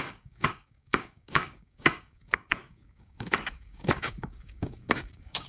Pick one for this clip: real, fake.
fake